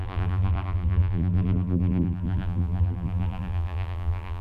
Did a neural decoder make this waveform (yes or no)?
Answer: yes